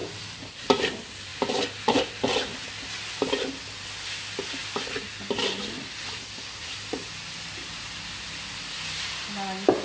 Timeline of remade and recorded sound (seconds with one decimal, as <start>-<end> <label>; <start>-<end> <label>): 0.0-9.8 recorded